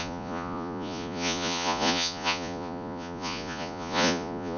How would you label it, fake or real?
fake